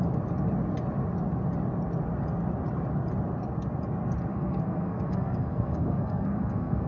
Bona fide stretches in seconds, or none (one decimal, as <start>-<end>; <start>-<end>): 0.0-4.3